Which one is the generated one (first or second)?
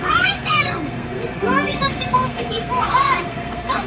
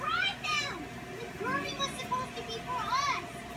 first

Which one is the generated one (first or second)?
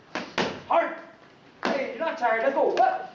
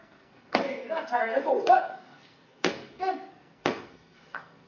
second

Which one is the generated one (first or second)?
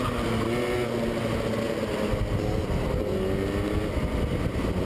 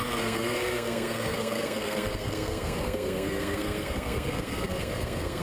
second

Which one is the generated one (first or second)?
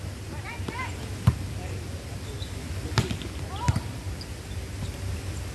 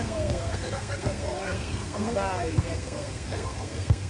second